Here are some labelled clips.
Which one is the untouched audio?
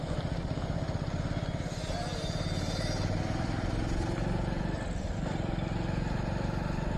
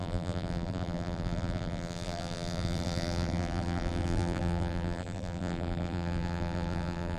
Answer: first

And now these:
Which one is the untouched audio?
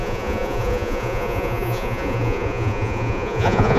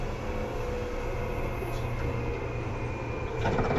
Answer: second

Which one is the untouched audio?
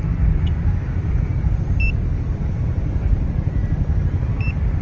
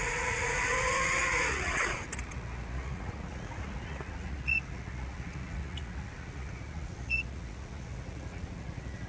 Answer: first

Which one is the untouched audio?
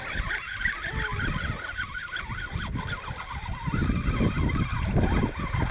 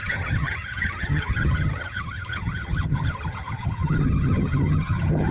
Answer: first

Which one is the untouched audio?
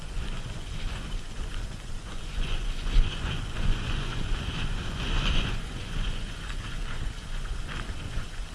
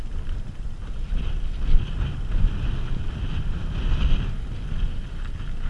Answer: second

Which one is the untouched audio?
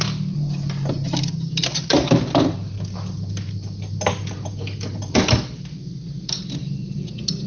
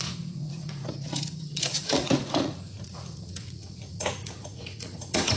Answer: first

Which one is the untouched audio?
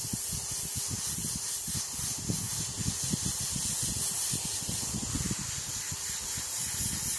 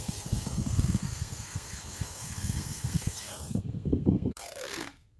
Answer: first